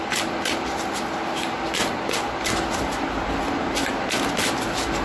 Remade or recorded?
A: recorded